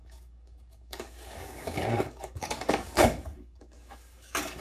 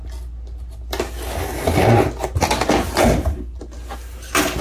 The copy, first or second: first